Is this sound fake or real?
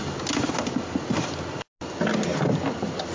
real